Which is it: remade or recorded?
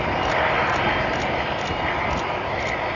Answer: recorded